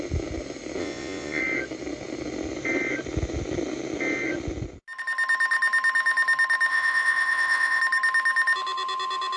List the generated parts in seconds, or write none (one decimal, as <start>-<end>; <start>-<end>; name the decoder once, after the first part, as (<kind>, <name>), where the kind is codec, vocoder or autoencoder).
0.8-1.4 (vocoder, Vocos); 6.7-7.8